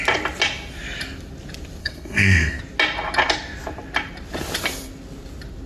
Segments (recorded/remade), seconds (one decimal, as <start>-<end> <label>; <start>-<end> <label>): 0.0-1.8 recorded; 1.8-2.6 remade; 2.6-5.7 recorded